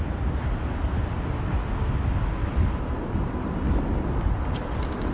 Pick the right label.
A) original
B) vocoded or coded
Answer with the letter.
A